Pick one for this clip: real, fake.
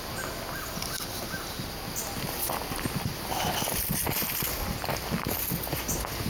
real